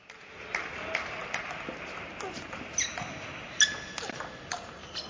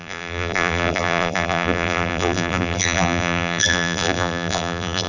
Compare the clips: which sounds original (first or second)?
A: first